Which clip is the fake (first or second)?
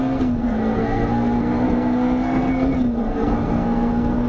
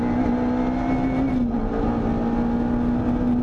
first